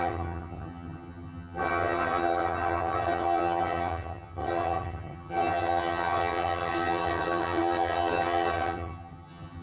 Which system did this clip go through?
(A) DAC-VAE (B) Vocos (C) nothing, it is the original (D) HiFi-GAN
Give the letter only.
D